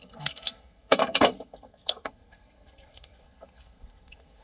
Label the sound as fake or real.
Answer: fake